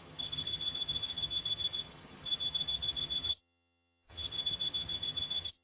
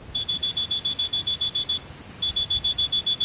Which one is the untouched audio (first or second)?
second